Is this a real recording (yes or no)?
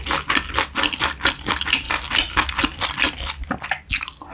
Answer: yes